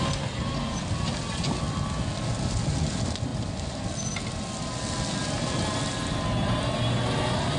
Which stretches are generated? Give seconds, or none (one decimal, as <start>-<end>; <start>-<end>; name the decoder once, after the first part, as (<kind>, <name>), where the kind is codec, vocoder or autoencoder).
none